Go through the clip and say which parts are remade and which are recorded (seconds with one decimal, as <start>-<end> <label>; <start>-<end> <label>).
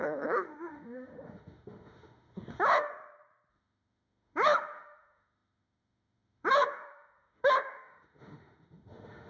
0.0-2.9 remade; 2.9-3.5 recorded; 3.5-9.3 remade